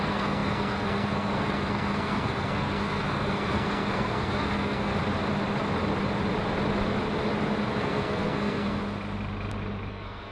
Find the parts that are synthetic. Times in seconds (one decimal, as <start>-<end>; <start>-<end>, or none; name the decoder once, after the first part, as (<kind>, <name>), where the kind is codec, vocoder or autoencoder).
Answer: 0.0-4.9 (codec, SNAC); 7.7-8.8; 9.9-10.3